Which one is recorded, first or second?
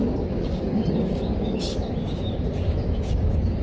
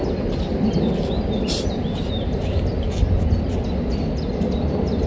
second